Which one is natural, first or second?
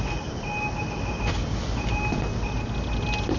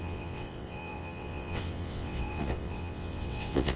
first